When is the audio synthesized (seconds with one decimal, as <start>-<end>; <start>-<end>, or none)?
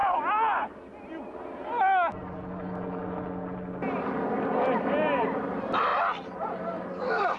4.3-7.4